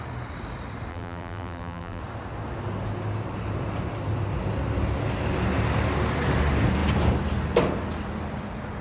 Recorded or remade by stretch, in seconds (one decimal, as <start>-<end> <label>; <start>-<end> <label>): 0.0-0.9 recorded; 0.9-2.0 remade; 2.0-8.8 recorded